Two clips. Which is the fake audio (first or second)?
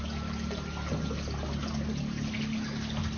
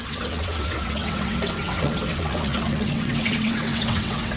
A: second